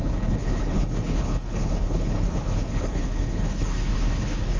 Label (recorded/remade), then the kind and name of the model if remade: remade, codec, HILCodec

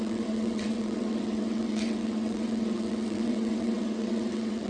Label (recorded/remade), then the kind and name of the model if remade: remade, vocoder, WaveNeXt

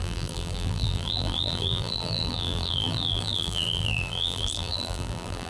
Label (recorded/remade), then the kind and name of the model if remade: remade, vocoder, BigVGAN v2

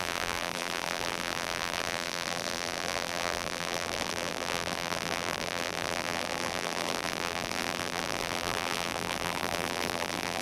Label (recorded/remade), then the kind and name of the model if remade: remade, vocoder, BigVGAN v2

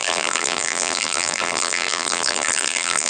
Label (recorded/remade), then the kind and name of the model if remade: remade, vocoder, BigVGAN v2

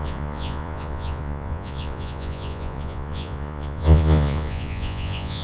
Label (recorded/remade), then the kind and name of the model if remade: remade, vocoder, Vocos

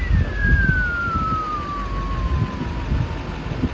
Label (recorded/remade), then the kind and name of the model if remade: recorded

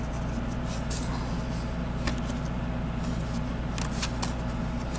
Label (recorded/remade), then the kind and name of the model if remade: recorded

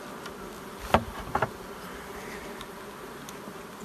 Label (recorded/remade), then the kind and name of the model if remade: recorded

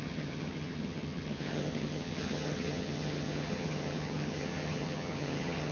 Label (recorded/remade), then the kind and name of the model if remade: remade, vocoder, HiFi-GAN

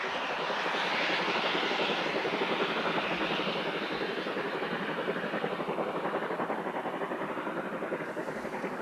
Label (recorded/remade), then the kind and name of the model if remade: recorded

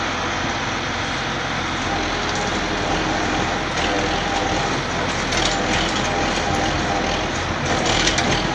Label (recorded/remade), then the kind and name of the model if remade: recorded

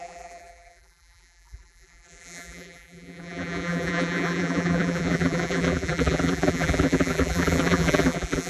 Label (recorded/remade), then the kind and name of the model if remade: remade, vocoder, BigVGAN v2